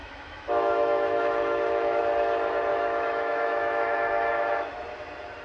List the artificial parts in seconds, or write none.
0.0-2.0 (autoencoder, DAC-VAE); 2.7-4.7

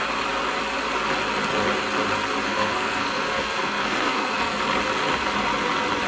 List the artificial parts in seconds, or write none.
2.5-4.6 (codec, SNAC)